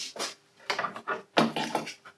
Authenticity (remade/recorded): recorded